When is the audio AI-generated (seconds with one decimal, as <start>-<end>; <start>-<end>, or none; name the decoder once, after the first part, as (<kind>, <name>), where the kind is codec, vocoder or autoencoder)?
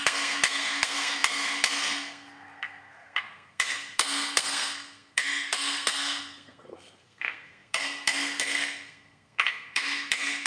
0.0-10.5 (codec, SNAC)